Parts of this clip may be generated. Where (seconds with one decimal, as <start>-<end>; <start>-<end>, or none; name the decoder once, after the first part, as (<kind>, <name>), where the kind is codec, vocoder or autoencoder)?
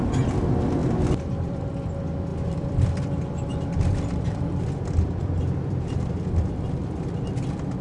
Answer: 0.8-1.7 (vocoder, BigVGAN v2); 2.3-6.8